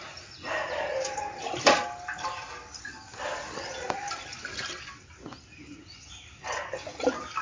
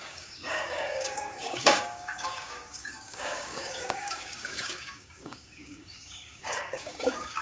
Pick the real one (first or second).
first